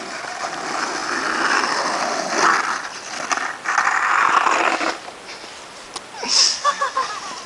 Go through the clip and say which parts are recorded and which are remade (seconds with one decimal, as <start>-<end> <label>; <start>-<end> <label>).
0.0-6.5 recorded; 6.5-7.1 remade; 7.1-7.5 recorded